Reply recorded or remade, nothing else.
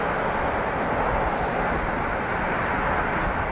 recorded